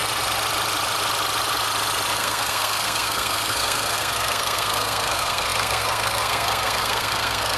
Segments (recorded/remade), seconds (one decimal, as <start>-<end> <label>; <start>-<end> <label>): 0.0-2.1 recorded; 2.1-7.6 remade